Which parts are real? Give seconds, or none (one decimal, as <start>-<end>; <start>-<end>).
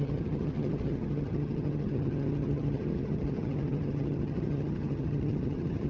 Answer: none